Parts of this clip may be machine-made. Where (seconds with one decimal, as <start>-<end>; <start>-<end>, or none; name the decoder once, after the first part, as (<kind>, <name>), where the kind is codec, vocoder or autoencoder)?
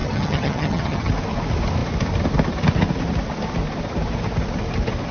0.0-1.1 (vocoder, HiFi-GAN)